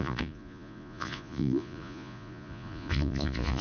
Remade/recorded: remade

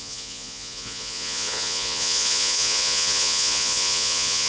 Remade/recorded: remade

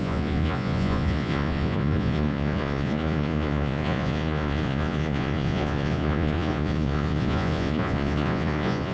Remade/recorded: remade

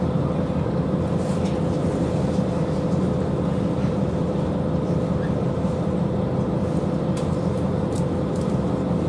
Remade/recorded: recorded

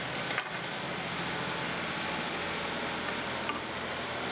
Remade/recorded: recorded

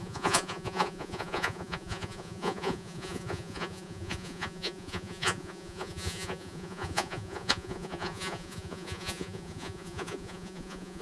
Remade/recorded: remade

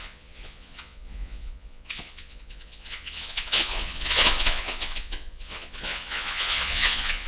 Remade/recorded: remade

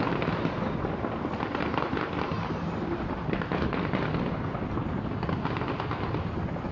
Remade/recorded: recorded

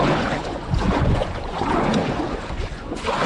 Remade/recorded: remade